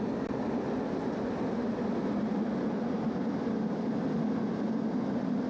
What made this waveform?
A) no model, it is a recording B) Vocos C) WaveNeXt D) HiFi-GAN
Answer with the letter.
A